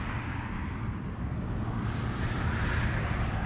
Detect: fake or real real